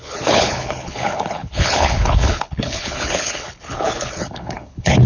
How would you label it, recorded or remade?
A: remade